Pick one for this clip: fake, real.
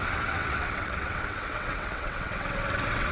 fake